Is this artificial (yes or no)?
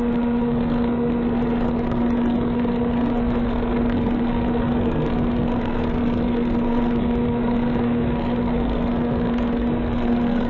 yes